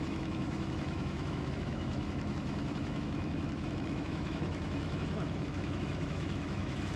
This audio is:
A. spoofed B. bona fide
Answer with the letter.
A